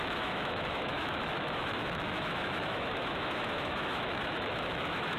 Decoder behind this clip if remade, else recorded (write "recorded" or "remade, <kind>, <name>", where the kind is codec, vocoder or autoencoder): remade, autoencoder, DAC-VAE